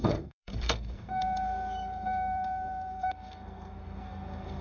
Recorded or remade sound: remade